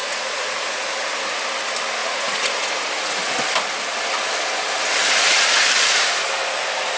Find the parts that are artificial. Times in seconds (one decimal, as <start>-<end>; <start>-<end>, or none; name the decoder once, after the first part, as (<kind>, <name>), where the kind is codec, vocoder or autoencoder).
0.0-0.9 (vocoder, Vocos); 2.0-3.3